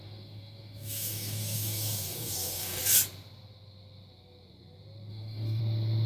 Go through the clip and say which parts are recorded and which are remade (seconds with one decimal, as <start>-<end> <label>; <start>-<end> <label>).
0.0-2.8 remade; 2.8-5.1 recorded; 5.1-5.6 remade; 5.6-6.1 recorded